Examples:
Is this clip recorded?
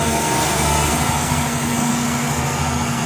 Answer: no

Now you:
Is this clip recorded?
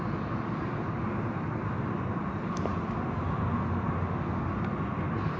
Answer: yes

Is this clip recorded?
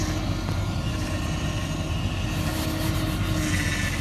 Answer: yes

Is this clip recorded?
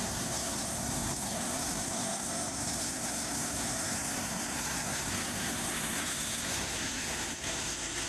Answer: no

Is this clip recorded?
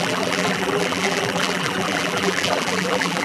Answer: no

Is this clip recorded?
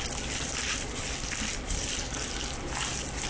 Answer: no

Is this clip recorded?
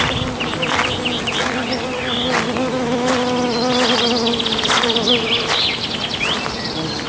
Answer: yes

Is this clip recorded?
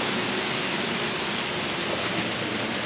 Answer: yes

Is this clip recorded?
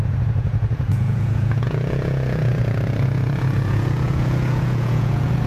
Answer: no